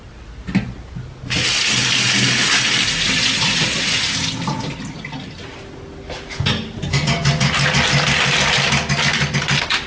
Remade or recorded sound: recorded